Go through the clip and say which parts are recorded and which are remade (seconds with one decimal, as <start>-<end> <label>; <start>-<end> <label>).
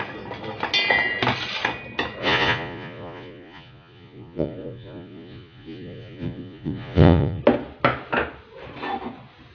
0.0-2.2 recorded; 2.2-7.4 remade; 7.4-9.5 recorded